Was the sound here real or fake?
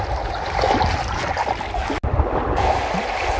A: real